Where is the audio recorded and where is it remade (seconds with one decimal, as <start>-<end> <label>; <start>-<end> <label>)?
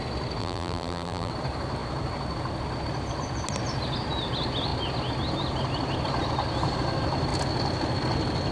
0.0-0.4 recorded; 0.4-1.3 remade; 1.3-8.5 recorded